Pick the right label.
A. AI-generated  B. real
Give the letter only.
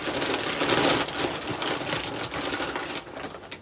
B